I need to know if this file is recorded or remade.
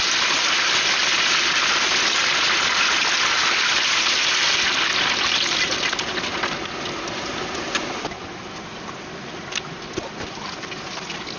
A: recorded